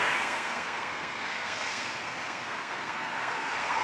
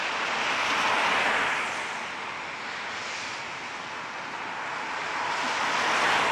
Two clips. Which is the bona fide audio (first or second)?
second